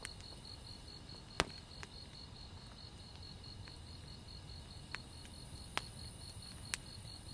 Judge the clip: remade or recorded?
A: recorded